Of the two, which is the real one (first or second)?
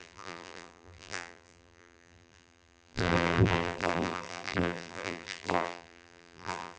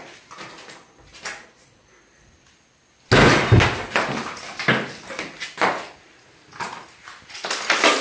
second